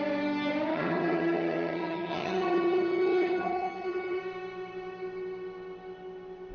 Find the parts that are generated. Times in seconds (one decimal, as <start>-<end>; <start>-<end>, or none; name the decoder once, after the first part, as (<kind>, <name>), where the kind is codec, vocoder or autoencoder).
0.7-4.2 (vocoder, HiFi-GAN)